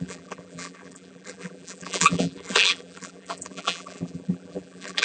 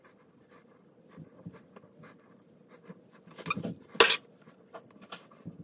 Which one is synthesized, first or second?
first